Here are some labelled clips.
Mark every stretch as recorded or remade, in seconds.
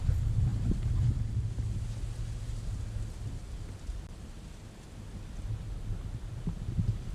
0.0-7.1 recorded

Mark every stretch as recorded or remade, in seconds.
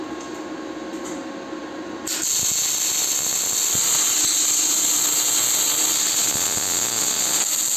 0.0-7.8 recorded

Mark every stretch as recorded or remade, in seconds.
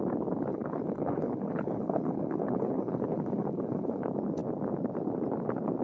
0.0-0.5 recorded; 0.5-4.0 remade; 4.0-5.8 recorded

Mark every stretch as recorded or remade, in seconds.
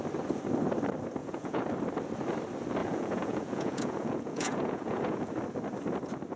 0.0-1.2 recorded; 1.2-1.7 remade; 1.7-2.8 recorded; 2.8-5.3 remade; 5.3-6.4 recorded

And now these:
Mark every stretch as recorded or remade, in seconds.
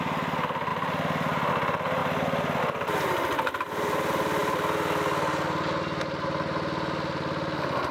0.0-7.9 recorded